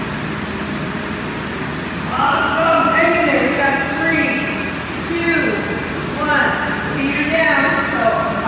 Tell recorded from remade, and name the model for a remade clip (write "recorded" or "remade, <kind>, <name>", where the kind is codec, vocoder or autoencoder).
recorded